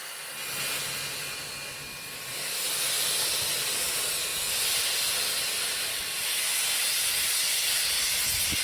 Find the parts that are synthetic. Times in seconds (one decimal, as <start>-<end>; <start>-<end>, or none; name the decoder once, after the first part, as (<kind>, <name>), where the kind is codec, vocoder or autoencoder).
2.3-3.5 (vocoder, BigVGAN v2)